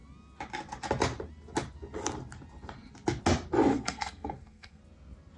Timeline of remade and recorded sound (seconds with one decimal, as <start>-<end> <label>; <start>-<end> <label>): 0.0-3.7 recorded; 3.7-4.8 remade; 4.8-5.4 recorded